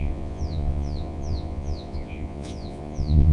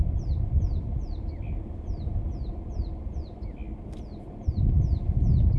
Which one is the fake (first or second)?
first